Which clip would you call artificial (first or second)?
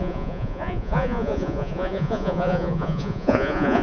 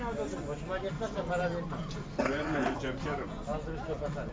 first